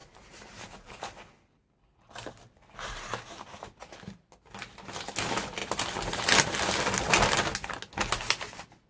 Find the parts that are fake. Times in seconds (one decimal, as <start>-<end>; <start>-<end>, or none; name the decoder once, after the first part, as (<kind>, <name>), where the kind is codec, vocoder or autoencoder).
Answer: 0.0-0.9 (vocoder, BigVGAN v2)

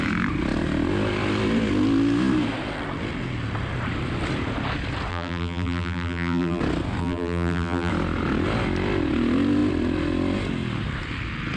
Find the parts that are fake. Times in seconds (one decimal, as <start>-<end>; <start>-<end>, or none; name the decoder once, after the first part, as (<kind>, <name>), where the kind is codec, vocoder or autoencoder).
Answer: 5.1-6.6 (vocoder, BigVGAN v2); 7.0-7.9

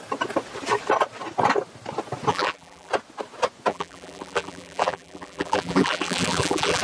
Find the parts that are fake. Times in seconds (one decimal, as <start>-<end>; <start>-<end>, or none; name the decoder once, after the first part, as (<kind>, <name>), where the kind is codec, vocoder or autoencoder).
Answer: 2.3-2.9 (vocoder, BigVGAN v2); 3.7-6.8

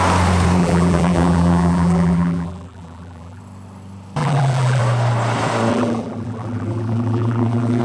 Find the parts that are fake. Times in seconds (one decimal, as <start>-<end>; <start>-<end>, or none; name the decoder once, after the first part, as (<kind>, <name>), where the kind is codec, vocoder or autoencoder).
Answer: 0.6-3.4 (vocoder, BigVGAN v2); 4.2-4.8; 5.7-7.8